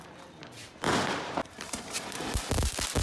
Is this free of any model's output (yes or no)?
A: yes